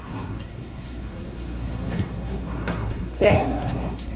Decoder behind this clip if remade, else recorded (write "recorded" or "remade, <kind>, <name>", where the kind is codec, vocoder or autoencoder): remade, codec, SNAC